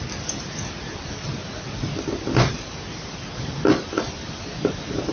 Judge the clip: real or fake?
real